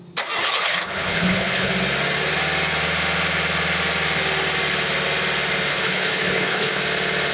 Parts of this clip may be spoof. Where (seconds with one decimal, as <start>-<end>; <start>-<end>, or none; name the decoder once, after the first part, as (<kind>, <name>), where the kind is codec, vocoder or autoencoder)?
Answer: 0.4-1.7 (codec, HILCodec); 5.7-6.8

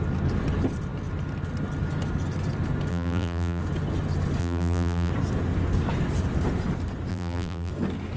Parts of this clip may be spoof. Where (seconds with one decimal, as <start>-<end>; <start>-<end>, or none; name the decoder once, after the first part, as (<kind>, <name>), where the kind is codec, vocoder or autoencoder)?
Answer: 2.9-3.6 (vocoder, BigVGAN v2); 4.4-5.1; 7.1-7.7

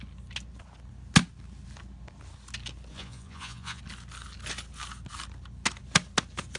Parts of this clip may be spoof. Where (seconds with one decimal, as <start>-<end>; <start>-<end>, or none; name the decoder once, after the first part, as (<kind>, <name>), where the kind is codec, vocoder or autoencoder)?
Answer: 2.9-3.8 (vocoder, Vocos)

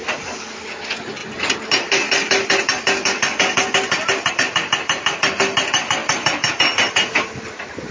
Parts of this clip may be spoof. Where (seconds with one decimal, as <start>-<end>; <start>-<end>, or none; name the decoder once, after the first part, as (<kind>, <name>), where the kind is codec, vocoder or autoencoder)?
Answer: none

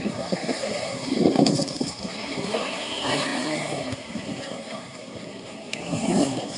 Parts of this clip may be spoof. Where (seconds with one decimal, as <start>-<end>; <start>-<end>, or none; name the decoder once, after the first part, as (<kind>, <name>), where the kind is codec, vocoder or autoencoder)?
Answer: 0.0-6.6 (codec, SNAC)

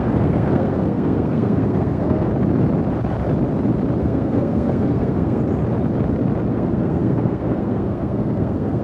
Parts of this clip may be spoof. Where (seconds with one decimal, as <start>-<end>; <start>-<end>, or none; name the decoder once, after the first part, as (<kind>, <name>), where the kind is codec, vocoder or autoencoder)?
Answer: 0.0-2.3 (codec, SNAC); 4.0-5.4; 6.5-8.8

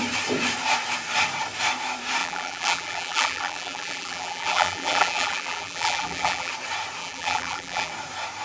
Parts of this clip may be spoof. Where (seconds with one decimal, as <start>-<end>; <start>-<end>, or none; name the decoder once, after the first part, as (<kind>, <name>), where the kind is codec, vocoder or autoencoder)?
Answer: 2.2-6.5 (vocoder, BigVGAN v2); 7.0-7.9

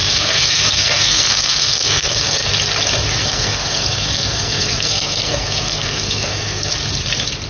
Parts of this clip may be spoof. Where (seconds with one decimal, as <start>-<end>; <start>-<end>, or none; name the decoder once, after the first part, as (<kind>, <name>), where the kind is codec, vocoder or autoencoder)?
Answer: 0.0-2.5 (codec, SNAC); 3.2-6.7